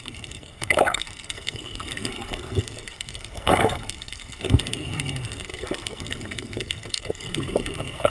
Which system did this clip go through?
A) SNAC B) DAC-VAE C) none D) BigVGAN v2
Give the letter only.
A